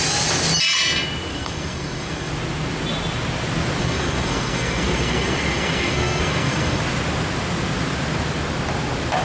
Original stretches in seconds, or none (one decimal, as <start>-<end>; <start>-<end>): 0.0-1.3; 2.3-3.8; 6.8-9.2